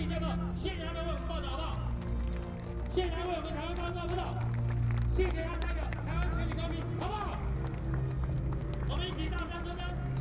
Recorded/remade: recorded